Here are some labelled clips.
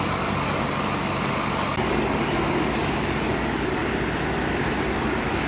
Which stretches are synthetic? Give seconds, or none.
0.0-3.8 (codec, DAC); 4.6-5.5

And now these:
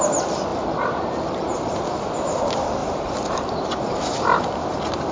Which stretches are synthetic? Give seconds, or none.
2.8-3.5 (vocoder, BigVGAN v2)

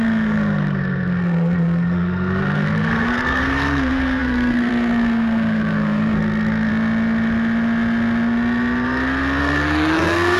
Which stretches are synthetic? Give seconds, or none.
0.0-6.7 (codec, SNAC); 9.4-10.4

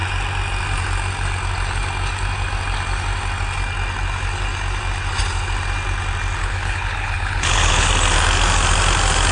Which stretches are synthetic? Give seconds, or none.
6.4-7.9 (codec, HILCodec)

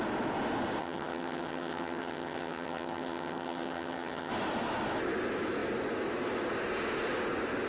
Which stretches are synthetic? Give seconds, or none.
0.8-4.3 (vocoder, HiFi-GAN)